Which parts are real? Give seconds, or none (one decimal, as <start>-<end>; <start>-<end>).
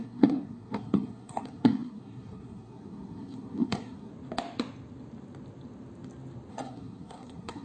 4.1-6.5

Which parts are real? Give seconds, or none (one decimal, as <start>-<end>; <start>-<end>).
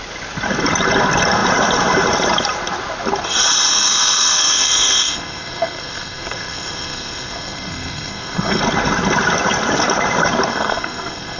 0.0-3.7; 8.6-10.5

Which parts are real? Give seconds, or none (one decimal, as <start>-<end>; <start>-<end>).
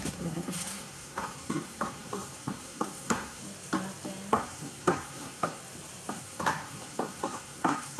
3.4-4.3; 5.6-6.1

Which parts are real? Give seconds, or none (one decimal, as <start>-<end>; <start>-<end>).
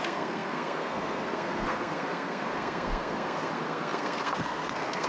none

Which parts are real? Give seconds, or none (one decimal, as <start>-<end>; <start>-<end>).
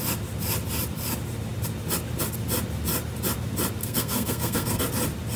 0.0-3.8; 4.8-5.4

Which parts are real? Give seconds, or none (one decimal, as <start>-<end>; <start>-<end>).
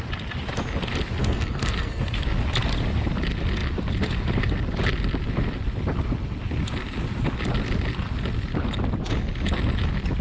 0.0-1.2; 2.2-10.2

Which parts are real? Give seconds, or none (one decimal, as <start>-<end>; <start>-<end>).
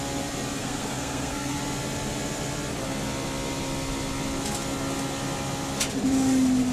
0.0-0.6; 1.6-6.7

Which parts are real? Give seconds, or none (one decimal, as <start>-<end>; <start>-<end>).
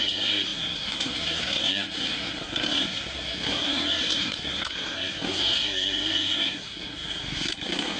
none